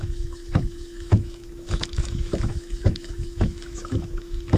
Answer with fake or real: fake